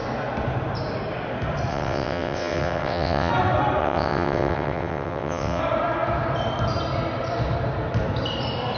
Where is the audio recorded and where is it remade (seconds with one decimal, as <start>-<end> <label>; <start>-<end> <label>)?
0.0-1.7 recorded; 1.7-3.3 remade; 3.3-3.8 recorded; 3.8-5.6 remade; 5.6-8.8 recorded